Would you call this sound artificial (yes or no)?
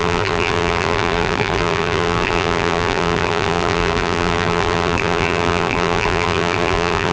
yes